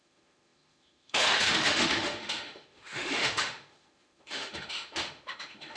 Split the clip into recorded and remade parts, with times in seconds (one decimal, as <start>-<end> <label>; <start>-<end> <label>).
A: 0.0-5.8 remade